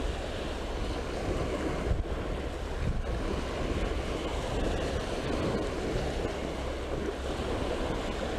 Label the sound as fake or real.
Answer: real